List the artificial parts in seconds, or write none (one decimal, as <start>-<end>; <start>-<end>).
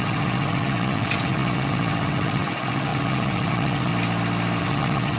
0.0-3.9; 4.6-5.2